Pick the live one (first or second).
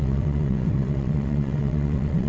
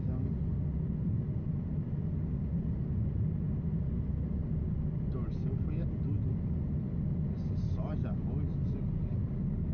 second